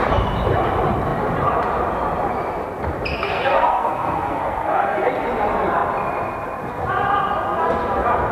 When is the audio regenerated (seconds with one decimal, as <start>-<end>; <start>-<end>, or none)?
3.1-5.0

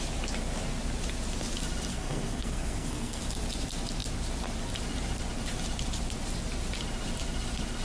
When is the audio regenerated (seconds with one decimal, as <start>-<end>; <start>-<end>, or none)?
1.9-3.2

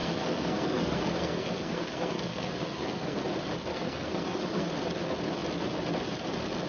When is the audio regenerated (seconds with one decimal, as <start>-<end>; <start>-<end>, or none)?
0.0-3.2; 3.7-4.7